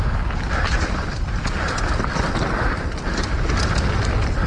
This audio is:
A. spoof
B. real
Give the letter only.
B